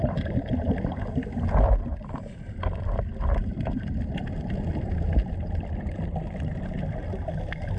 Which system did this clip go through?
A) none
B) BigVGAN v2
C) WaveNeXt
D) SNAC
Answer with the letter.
B